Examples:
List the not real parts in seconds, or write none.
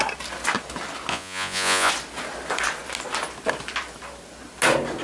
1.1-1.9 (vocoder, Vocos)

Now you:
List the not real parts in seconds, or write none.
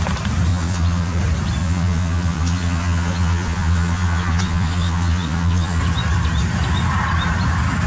0.5-1.2 (vocoder, Vocos); 1.6-5.8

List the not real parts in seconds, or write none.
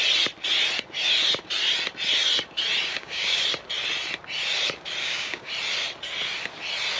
2.9-3.4 (codec, DAC); 5.0-5.5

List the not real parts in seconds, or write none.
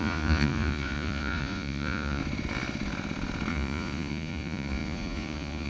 0.0-2.2 (vocoder, Vocos); 3.5-5.7